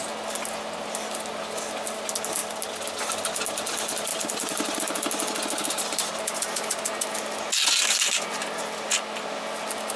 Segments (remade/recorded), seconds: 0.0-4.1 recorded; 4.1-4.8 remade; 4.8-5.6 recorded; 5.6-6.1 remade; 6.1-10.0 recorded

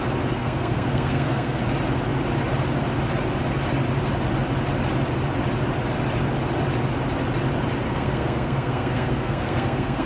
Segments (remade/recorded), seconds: 0.0-0.4 recorded; 0.4-1.6 remade; 1.6-7.9 recorded; 7.9-10.1 remade

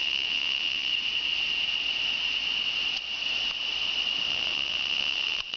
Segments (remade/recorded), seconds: 0.0-0.9 remade; 0.9-4.3 recorded; 4.3-5.6 remade

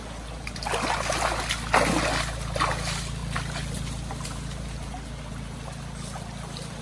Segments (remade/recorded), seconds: 0.0-6.8 recorded

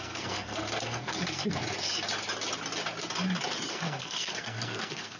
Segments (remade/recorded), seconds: 0.0-1.6 remade; 1.6-3.7 recorded; 3.7-5.2 remade